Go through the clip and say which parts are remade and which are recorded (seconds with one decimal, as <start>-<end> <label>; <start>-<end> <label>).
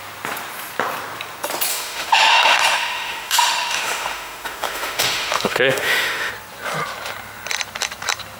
0.0-1.7 recorded; 1.7-6.3 remade; 6.3-8.4 recorded